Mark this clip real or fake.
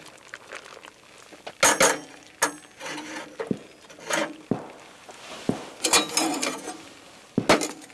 real